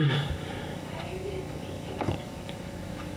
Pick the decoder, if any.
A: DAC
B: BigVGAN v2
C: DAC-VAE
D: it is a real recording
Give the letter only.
A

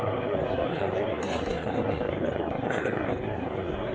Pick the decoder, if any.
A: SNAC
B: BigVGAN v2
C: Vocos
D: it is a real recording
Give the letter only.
A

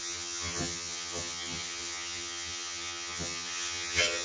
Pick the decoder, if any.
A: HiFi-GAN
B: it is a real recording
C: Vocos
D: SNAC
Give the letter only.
A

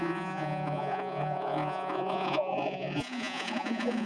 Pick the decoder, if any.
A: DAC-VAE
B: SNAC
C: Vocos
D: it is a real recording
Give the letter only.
C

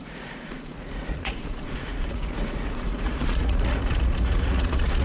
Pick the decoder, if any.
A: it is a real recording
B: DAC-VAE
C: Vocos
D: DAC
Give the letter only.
C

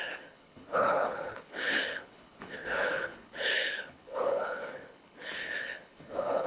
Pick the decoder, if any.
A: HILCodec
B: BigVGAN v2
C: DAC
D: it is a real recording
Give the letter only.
A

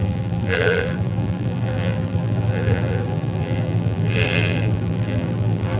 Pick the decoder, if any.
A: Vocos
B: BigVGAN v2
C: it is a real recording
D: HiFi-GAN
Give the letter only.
B